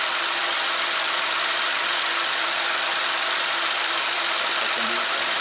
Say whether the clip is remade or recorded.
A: remade